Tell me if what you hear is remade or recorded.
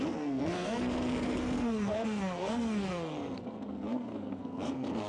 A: remade